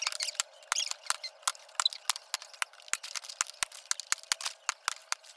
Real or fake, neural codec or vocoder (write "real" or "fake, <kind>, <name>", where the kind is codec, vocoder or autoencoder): real